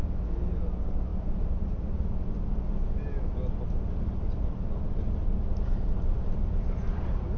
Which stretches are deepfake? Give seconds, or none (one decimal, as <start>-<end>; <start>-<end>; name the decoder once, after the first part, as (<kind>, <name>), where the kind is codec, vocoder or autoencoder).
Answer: none